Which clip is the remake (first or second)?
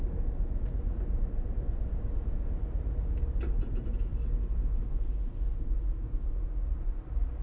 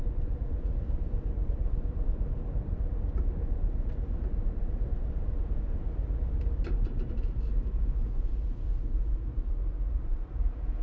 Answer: second